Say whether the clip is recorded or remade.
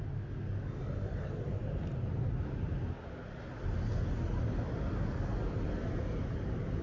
recorded